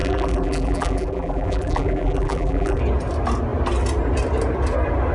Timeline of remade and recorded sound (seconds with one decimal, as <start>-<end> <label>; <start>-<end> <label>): 0.0-2.8 remade; 2.8-5.1 recorded